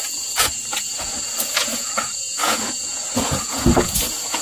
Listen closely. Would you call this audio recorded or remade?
remade